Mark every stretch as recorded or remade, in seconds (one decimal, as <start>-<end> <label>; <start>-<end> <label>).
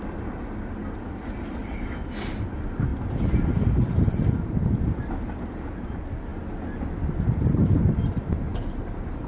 0.0-9.3 recorded